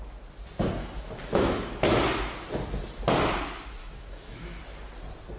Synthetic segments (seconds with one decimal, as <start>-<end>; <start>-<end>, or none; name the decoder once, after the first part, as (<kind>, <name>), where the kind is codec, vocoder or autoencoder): 0.8-2.0 (autoencoder, DAC-VAE); 3.8-4.6